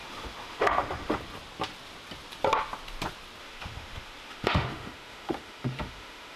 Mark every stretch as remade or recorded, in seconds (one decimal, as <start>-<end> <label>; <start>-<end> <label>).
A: 0.0-1.2 remade; 1.2-3.4 recorded; 3.4-6.4 remade